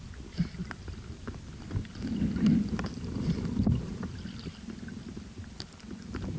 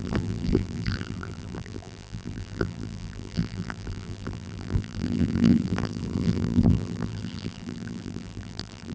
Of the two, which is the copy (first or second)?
second